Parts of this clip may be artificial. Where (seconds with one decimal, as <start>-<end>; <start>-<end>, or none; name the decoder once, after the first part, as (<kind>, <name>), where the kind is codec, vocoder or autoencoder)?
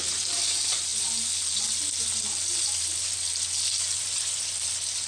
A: none